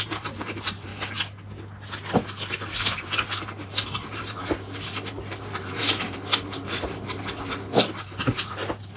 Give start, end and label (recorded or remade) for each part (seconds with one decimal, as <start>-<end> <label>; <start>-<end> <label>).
0.0-0.9 remade; 0.9-2.5 recorded; 2.5-9.0 remade